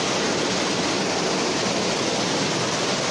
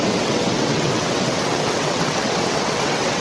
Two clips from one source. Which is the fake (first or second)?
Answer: second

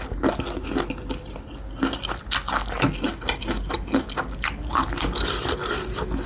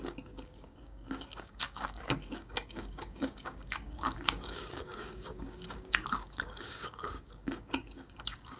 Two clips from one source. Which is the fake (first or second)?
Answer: second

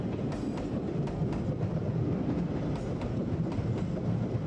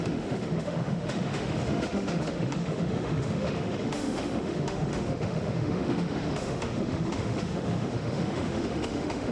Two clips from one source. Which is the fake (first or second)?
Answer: second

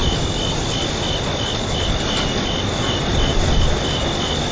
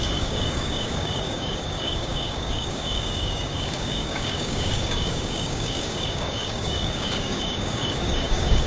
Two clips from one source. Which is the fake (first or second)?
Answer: second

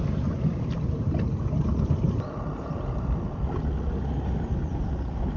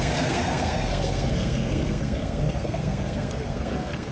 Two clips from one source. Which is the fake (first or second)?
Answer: second